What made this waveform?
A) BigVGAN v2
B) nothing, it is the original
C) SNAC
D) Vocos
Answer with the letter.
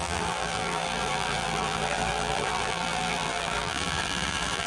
A